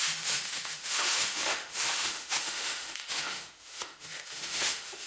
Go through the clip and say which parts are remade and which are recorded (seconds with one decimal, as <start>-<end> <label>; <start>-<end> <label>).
0.0-5.1 remade